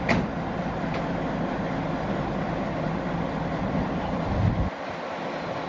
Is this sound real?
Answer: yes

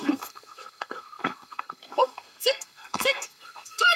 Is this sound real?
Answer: no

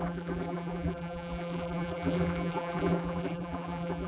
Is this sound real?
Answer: no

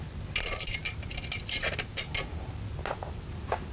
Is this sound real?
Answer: yes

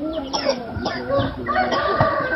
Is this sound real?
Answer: no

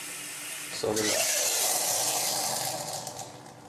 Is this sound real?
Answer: yes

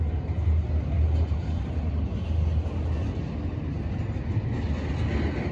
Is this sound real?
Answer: yes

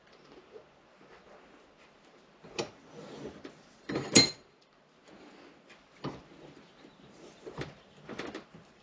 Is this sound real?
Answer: yes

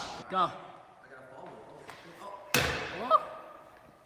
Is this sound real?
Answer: yes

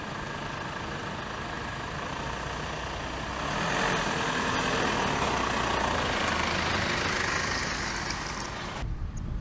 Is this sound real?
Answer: yes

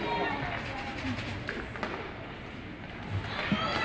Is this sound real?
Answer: yes